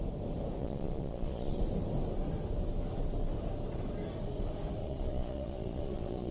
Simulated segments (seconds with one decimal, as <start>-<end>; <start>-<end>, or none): 0.6-1.6; 4.8-6.3